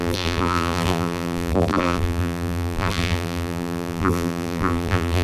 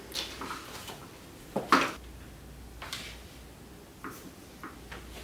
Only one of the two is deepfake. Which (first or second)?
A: first